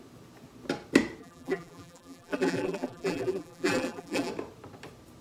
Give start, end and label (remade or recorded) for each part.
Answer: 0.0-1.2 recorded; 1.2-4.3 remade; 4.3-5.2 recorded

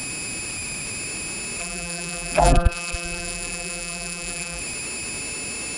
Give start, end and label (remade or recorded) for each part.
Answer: 0.0-1.6 recorded; 1.6-4.6 remade; 4.6-5.8 recorded

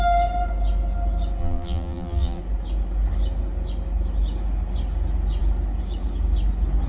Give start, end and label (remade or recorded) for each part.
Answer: 0.0-1.4 recorded; 1.4-2.4 remade; 2.4-6.9 recorded